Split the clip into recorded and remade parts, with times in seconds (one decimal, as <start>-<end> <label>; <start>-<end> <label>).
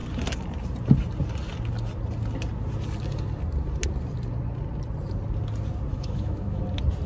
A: 0.0-5.9 recorded; 5.9-6.6 remade; 6.6-7.1 recorded